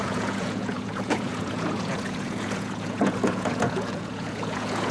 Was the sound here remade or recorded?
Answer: remade